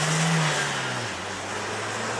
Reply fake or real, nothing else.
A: real